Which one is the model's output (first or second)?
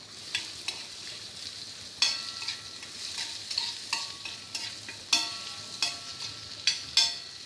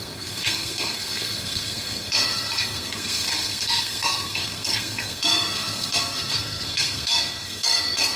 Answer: second